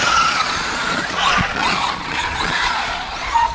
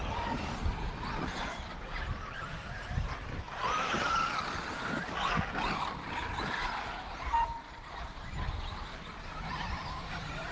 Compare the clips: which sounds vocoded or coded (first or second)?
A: first